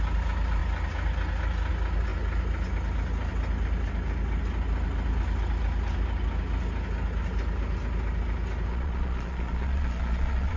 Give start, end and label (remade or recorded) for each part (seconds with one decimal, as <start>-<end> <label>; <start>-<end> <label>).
0.0-8.7 recorded; 8.7-10.6 remade